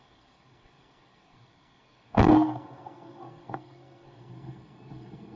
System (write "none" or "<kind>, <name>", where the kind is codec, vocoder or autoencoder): codec, SNAC